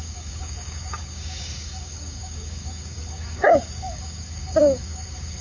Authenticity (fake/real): fake